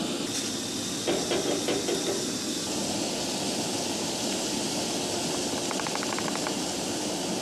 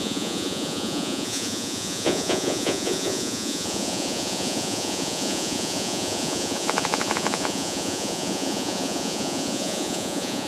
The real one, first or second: first